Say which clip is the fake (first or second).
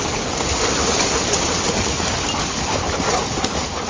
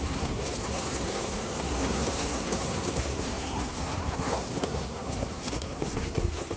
second